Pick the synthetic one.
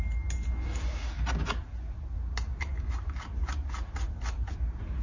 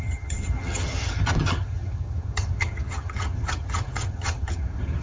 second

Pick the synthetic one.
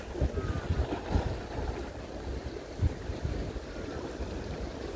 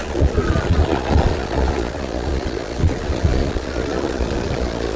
second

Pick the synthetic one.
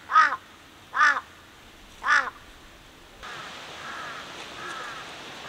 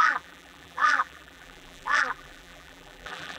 second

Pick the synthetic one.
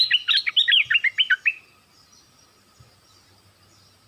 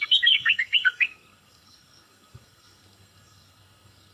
second